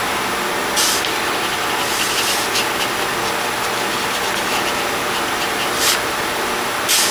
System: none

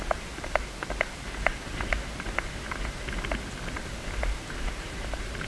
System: none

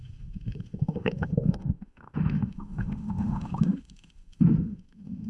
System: autoencoder, DAC-VAE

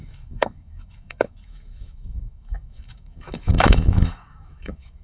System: autoencoder, DAC-VAE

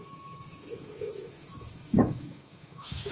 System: autoencoder, DAC-VAE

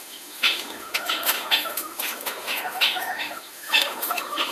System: autoencoder, DAC-VAE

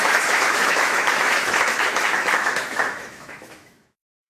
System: autoencoder, DAC-VAE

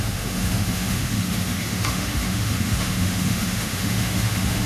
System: autoencoder, DAC-VAE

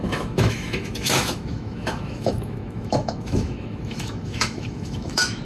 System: autoencoder, DAC-VAE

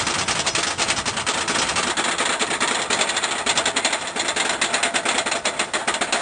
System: none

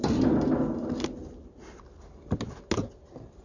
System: none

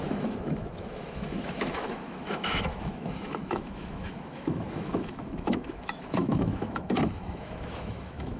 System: autoencoder, DAC-VAE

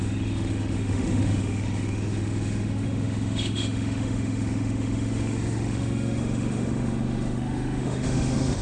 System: autoencoder, DAC-VAE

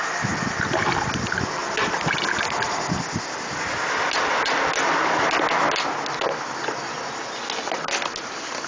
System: none